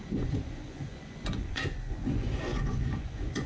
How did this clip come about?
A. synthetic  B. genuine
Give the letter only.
A